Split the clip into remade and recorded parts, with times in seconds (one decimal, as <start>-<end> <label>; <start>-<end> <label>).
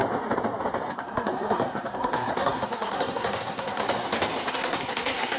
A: 0.0-0.9 recorded; 0.9-3.8 remade; 3.8-4.5 recorded; 4.5-5.4 remade